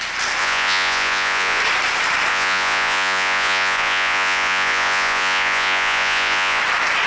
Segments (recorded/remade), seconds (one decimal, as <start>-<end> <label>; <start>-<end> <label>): 0.0-0.4 recorded; 0.4-1.6 remade; 1.6-2.3 recorded; 2.3-6.6 remade; 6.6-7.1 recorded